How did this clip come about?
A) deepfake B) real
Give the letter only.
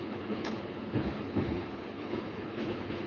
A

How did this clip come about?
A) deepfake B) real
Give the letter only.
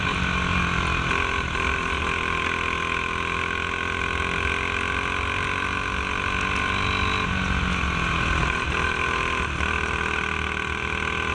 B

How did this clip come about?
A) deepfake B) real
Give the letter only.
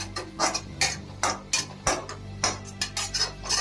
B